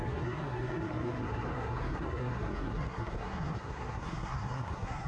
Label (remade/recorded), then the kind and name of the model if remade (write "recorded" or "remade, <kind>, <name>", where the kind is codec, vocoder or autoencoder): remade, codec, SNAC